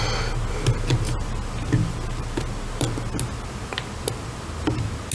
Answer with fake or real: real